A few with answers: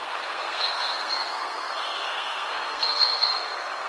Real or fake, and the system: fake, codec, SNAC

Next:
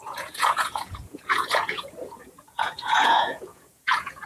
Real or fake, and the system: fake, vocoder, Vocos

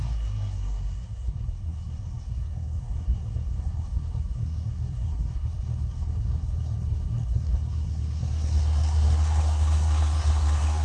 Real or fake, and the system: fake, codec, SNAC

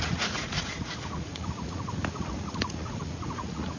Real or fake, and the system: fake, vocoder, Vocos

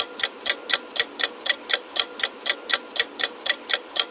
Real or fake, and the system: real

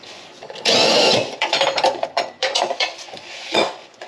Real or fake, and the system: fake, vocoder, Vocos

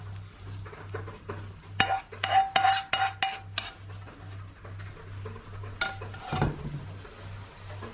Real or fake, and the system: real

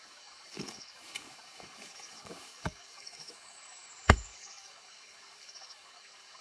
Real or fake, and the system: fake, codec, DAC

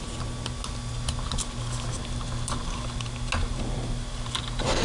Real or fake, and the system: real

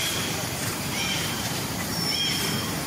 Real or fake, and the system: fake, vocoder, BigVGAN v2